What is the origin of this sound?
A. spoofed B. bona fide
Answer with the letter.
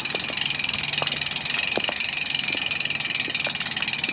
B